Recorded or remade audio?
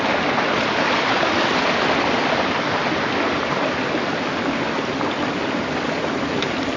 recorded